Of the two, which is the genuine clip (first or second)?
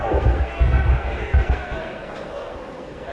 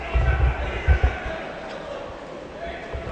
second